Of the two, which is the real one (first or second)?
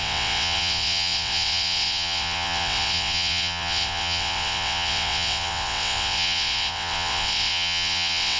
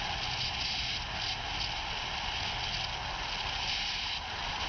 second